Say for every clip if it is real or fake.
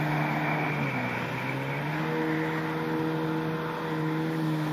real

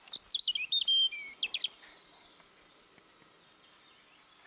real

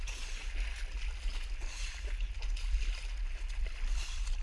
real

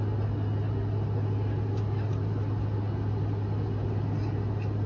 real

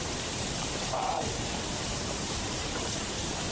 fake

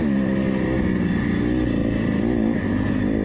real